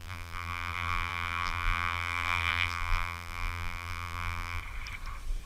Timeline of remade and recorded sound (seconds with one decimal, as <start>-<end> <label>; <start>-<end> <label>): 0.0-4.6 remade; 4.6-5.5 recorded